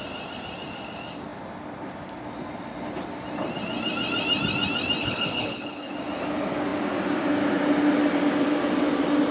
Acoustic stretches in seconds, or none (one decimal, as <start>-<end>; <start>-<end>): 0.0-5.0; 5.9-9.3